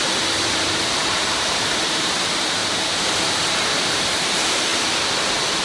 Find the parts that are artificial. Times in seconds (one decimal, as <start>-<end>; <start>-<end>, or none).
0.0-2.6; 3.7-4.7